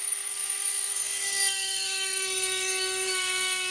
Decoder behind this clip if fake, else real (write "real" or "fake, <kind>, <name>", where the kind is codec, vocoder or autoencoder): fake, codec, SNAC